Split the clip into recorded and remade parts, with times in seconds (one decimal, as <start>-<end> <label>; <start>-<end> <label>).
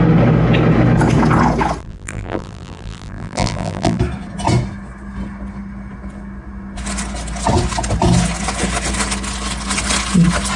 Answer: 0.0-1.8 recorded; 1.8-4.0 remade; 4.0-10.6 recorded